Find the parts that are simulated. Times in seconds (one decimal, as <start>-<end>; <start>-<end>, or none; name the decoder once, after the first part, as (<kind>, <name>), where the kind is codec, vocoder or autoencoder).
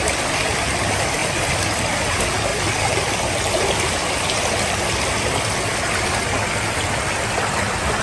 none